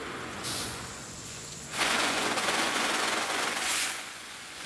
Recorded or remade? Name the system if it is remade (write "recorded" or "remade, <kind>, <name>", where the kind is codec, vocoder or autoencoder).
remade, vocoder, Vocos